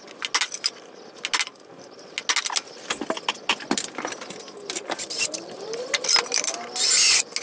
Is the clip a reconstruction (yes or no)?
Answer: no